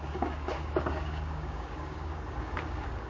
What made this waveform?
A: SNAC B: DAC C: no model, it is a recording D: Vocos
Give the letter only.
B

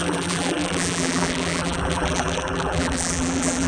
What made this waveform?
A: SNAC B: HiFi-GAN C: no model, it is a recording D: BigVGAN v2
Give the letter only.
D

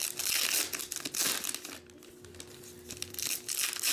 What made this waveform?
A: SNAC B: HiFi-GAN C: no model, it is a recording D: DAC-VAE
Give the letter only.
C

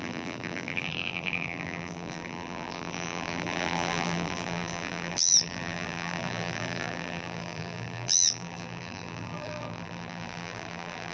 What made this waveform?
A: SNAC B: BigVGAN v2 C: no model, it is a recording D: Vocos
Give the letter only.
B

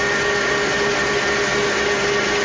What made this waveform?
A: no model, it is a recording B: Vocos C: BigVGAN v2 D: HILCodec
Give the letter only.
A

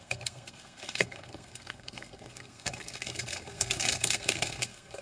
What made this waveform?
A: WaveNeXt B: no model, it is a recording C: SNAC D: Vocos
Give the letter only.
C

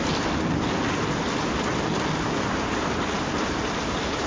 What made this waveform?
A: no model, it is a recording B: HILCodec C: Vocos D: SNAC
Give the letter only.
A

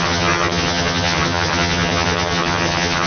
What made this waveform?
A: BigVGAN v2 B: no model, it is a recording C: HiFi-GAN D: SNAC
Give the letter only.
C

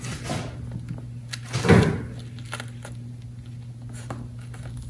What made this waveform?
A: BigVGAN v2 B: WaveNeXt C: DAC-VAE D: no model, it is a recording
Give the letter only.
D